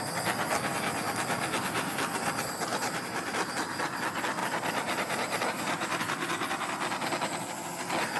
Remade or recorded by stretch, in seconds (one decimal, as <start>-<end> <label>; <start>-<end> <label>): 0.0-2.7 recorded; 2.7-3.5 remade; 3.5-4.4 recorded; 4.4-6.0 remade; 6.0-8.2 recorded